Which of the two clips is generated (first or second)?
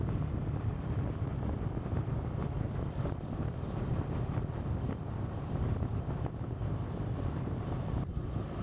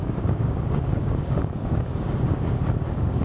second